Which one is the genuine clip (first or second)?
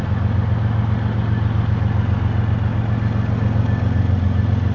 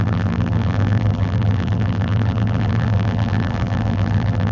first